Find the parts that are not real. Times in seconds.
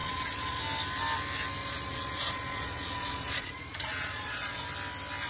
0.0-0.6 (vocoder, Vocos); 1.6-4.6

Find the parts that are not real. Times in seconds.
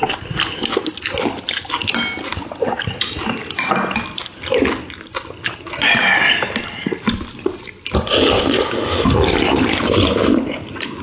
none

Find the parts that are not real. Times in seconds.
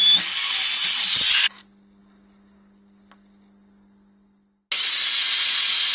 none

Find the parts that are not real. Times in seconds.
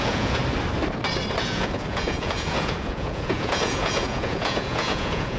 0.0-0.4 (vocoder, Vocos); 1.4-5.4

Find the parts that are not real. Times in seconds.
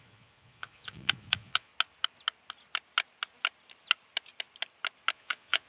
0.0-1.7 (vocoder, Vocos); 5.1-5.7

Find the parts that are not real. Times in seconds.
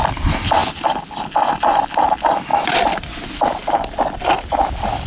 none